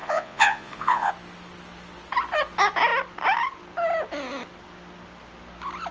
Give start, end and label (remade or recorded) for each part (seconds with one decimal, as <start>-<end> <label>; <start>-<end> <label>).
0.0-1.1 remade; 1.1-5.9 recorded